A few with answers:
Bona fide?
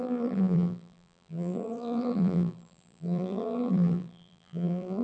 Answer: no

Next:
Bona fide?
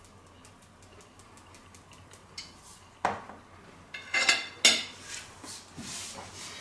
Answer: yes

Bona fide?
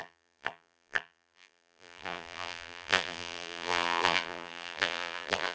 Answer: no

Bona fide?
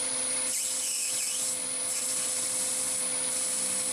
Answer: yes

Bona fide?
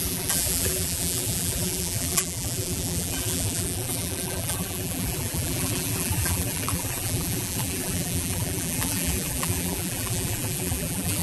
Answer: no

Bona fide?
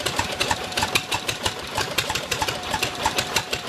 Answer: no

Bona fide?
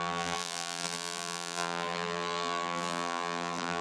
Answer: no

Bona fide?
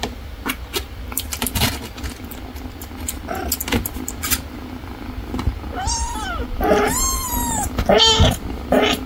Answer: yes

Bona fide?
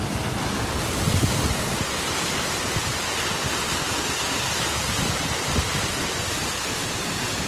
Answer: yes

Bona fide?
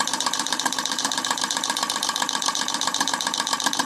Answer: no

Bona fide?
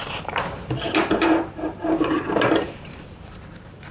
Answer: no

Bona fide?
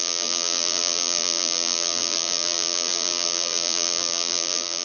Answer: no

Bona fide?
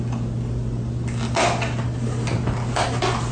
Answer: yes